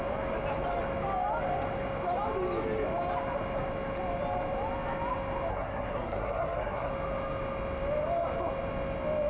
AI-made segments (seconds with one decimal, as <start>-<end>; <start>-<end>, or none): 5.5-6.9